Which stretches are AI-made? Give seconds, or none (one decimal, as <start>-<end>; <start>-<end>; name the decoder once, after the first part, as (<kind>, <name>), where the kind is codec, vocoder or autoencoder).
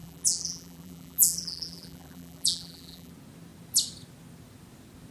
0.0-3.1 (vocoder, BigVGAN v2)